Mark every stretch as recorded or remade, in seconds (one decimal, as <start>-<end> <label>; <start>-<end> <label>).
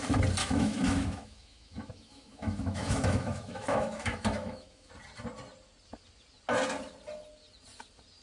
0.0-0.4 recorded; 0.4-4.9 remade; 4.9-8.2 recorded